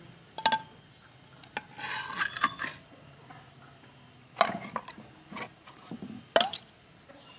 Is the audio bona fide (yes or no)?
yes